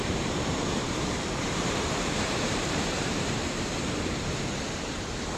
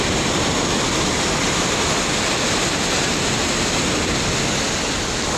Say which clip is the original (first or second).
second